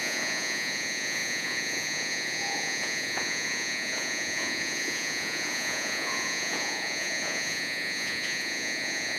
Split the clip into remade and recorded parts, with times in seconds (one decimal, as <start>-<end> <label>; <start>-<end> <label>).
0.0-9.2 remade